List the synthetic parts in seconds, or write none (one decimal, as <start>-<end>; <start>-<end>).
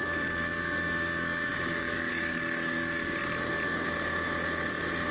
0.0-3.2